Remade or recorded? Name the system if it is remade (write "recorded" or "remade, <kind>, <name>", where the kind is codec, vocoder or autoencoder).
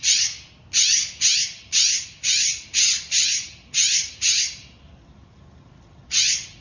recorded